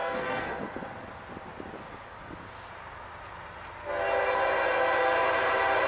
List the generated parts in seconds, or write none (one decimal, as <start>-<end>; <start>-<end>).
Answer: 0.0-0.6

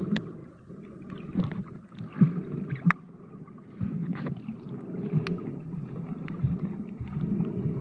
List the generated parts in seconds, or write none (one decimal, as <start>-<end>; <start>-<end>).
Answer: none

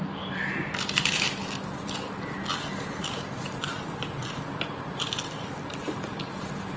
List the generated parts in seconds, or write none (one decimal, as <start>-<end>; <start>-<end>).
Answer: 0.0-1.4; 3.0-4.2; 5.7-6.8

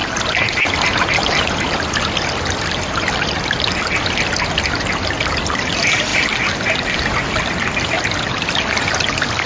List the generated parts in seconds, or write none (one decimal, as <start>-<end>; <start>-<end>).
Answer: none

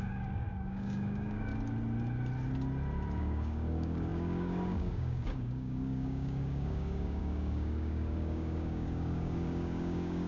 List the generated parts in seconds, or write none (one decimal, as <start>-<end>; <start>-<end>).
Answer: 0.0-1.5; 3.2-10.3

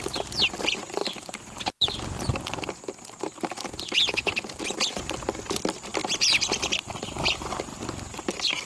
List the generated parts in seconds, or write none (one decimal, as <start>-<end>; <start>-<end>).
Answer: 6.0-6.8; 7.7-8.7